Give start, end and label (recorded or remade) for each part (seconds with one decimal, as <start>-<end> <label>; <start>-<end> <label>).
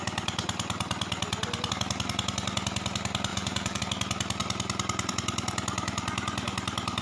0.0-3.3 recorded; 3.3-3.8 remade; 3.8-7.0 recorded